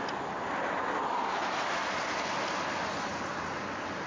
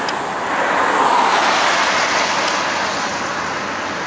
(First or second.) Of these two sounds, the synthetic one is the first